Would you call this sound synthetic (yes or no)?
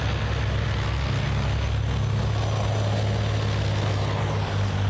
no